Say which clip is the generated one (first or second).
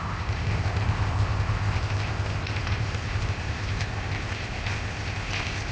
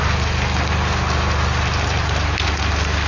first